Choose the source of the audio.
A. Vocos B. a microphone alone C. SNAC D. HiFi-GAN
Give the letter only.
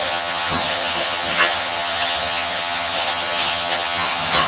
D